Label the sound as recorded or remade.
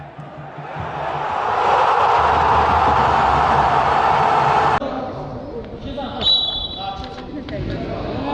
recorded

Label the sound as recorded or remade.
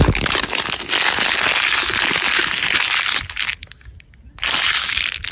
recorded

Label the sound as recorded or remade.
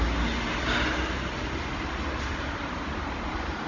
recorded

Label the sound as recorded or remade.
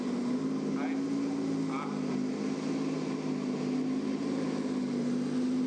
recorded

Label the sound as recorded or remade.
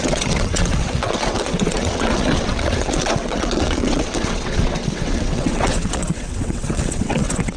remade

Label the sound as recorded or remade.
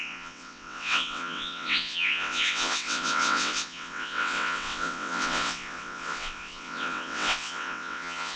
remade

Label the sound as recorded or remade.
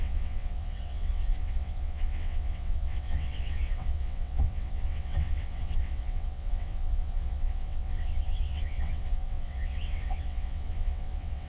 remade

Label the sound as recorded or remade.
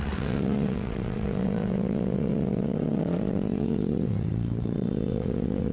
remade